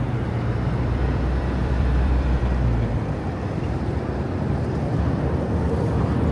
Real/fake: fake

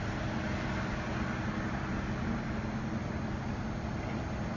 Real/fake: real